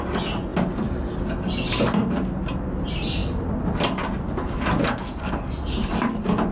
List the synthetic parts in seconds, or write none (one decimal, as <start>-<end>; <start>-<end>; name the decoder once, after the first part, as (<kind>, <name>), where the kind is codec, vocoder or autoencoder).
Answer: none